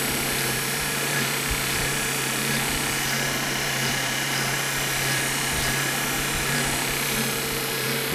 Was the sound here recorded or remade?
remade